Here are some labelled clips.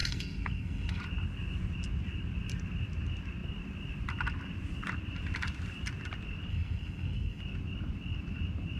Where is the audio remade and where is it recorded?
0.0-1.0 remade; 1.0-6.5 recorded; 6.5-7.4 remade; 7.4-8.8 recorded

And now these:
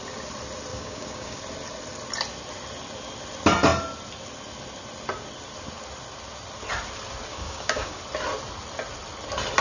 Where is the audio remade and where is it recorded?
0.0-0.7 recorded; 0.7-1.4 remade; 1.4-7.3 recorded; 7.3-8.0 remade; 8.0-9.6 recorded

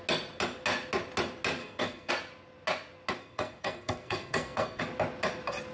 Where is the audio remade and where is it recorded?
0.0-1.6 recorded; 1.6-2.1 remade; 2.1-3.2 recorded; 3.2-4.8 remade; 4.8-5.7 recorded